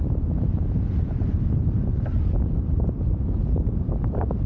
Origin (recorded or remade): remade